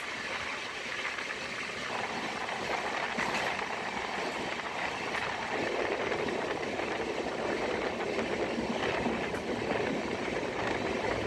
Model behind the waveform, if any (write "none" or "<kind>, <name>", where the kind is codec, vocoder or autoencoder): none